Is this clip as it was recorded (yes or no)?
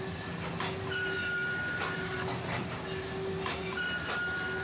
yes